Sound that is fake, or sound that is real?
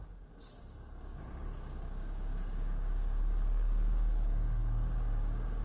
fake